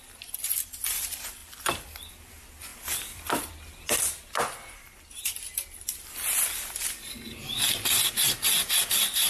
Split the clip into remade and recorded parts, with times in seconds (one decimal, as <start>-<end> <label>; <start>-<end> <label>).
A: 0.0-1.4 recorded; 1.4-2.1 remade; 2.1-2.7 recorded; 2.7-3.5 remade; 3.5-9.3 recorded